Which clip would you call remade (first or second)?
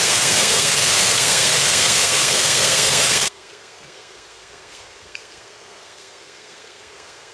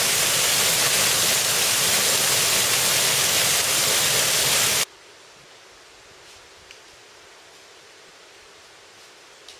first